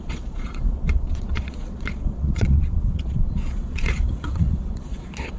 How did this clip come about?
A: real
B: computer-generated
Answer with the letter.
B